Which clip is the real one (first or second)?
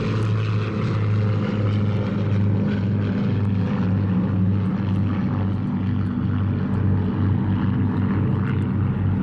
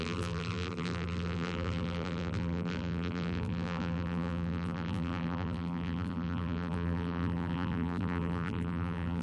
first